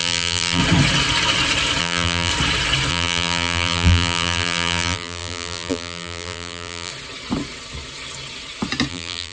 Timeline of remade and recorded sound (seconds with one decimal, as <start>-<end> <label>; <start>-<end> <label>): 0.0-0.6 remade; 0.6-1.8 recorded; 1.8-2.3 remade; 2.3-2.9 recorded; 2.9-6.9 remade; 6.9-8.9 recorded; 8.9-9.3 remade